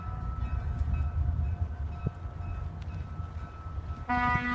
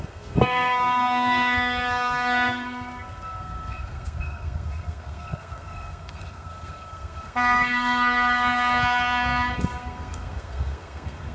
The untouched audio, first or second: first